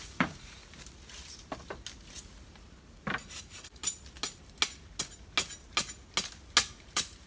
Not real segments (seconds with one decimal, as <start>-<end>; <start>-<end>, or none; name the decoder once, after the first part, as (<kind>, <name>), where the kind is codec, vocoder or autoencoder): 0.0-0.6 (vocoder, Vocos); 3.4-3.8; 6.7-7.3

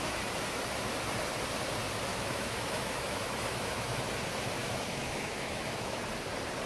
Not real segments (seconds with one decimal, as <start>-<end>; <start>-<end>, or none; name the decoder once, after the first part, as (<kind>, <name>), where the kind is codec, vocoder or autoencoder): 2.1-4.0 (autoencoder, DAC-VAE); 4.6-6.0

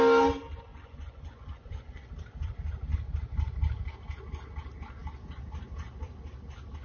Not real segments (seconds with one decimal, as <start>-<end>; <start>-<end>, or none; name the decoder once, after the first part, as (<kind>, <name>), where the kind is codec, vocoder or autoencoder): 0.7-2.1 (vocoder, Vocos)

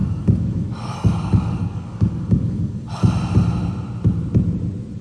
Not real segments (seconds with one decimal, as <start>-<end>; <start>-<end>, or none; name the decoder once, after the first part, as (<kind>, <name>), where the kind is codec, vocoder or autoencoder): 0.0-3.0 (codec, DAC)

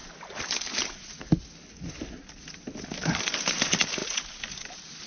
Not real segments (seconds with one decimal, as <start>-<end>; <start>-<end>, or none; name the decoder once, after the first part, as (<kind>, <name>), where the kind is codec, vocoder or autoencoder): none

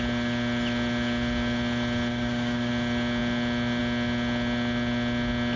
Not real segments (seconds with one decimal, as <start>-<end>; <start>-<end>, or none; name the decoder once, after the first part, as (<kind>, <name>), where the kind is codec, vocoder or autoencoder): 2.1-2.7 (codec, DAC)

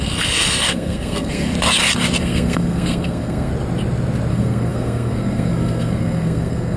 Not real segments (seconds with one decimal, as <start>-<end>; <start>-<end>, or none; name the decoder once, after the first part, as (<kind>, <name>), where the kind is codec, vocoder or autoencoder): 0.0-1.5 (codec, SNAC); 2.2-3.5; 4.3-6.8

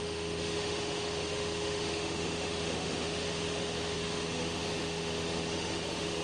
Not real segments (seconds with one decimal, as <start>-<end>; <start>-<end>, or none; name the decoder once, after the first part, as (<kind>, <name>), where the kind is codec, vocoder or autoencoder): 0.0-6.2 (autoencoder, DAC-VAE)